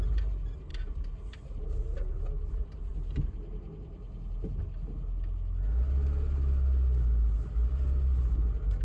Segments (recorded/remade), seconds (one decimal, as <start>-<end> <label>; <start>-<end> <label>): 0.0-8.8 recorded